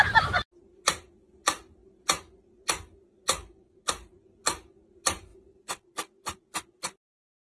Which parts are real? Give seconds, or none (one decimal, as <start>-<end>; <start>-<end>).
0.0-7.6